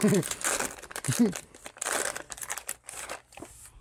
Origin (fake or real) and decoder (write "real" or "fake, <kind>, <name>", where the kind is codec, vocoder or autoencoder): real